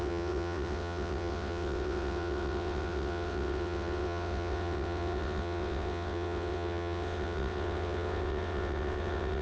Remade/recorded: remade